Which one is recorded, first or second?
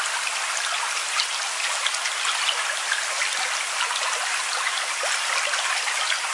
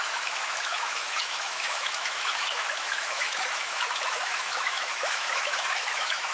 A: first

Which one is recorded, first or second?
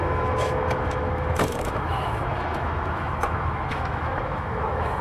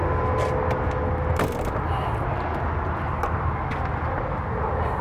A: second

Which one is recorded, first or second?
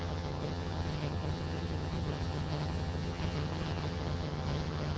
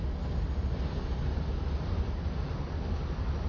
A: second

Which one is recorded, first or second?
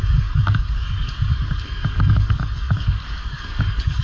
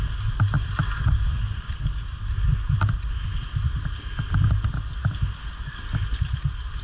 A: second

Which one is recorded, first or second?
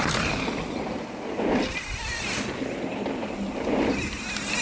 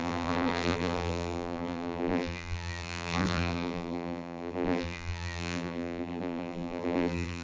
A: first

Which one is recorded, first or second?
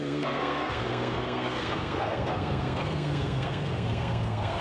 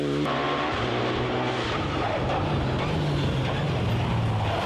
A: second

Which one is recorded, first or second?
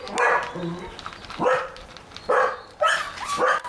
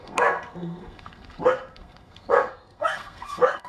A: first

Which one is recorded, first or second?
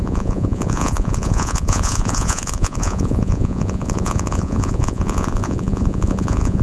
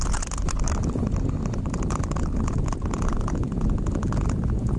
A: second